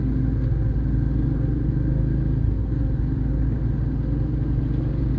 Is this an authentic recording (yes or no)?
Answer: yes